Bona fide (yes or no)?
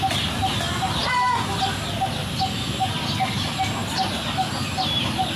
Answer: yes